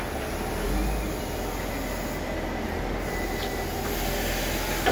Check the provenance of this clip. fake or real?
real